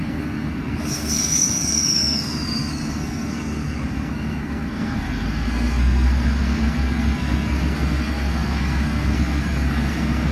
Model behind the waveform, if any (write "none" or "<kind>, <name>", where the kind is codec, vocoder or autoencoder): codec, SNAC